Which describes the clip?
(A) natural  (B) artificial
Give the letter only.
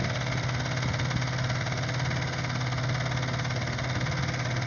A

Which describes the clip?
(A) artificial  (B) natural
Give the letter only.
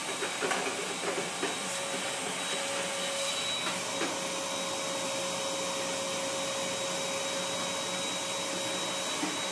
B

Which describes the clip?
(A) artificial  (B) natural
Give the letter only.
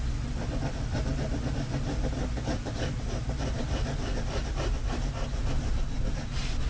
B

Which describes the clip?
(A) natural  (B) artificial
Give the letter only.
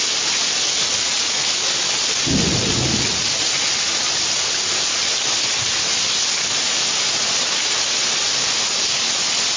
A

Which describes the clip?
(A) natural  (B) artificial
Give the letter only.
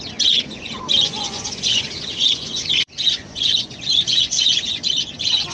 B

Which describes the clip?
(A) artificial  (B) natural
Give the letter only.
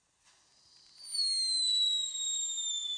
B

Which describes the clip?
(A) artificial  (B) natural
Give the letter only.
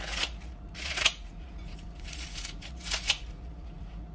A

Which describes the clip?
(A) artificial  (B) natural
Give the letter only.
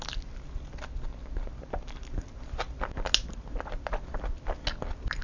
B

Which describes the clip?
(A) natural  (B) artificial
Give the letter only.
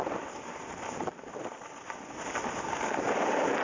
A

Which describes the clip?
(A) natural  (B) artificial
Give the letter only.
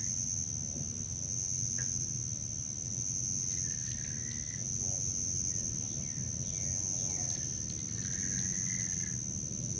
A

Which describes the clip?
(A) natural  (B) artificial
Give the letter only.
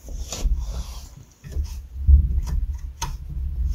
A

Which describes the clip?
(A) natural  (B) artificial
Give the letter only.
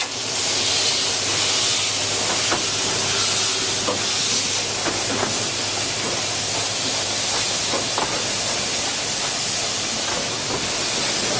A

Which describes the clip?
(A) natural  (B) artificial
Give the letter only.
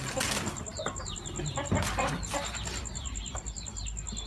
A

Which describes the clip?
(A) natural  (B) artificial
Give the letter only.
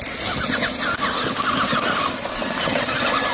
A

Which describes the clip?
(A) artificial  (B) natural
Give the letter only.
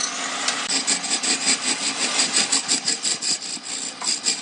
B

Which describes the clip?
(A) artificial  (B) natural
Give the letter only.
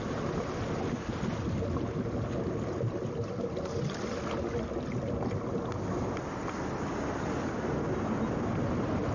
B